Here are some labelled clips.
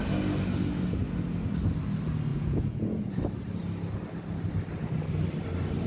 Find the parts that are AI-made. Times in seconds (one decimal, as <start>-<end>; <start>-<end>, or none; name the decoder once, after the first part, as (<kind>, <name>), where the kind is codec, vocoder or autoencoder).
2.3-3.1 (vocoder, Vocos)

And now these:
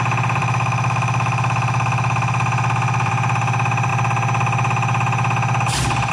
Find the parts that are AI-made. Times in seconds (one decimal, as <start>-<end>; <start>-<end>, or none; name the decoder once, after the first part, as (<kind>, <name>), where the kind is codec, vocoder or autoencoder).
0.4-3.1 (autoencoder, DAC-VAE)

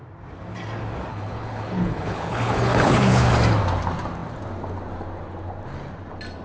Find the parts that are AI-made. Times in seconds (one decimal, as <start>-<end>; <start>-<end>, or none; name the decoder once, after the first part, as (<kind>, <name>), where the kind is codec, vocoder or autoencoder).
1.1-3.3 (codec, HILCodec)

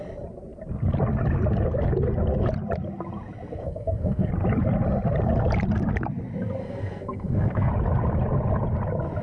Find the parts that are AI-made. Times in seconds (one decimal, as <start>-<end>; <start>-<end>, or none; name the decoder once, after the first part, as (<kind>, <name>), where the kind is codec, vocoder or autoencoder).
3.6-4.3 (codec, SNAC); 6.6-7.7

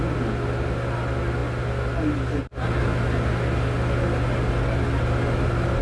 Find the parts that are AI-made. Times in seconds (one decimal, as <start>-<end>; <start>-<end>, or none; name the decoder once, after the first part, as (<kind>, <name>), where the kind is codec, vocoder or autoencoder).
none